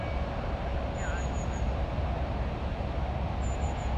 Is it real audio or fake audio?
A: real